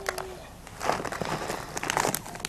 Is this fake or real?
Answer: real